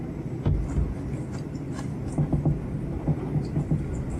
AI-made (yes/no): no